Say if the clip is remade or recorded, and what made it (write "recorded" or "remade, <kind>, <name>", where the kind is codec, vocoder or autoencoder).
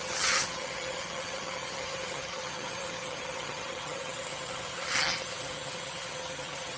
remade, vocoder, HiFi-GAN